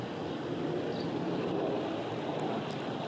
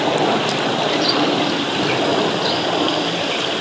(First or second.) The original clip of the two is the first